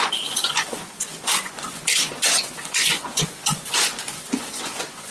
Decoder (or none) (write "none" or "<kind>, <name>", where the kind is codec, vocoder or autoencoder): vocoder, Vocos